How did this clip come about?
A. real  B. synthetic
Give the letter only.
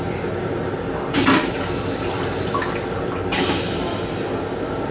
A